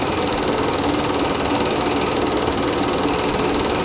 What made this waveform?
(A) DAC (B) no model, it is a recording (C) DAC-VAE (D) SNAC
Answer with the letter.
B